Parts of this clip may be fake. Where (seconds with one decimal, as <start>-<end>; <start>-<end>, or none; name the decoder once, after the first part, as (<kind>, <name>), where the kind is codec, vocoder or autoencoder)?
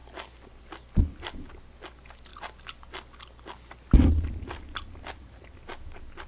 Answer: none